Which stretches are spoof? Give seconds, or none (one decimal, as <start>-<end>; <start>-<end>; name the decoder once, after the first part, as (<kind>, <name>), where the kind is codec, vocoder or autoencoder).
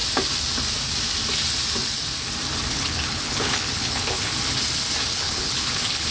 2.7-4.3 (codec, HILCodec); 5.1-6.1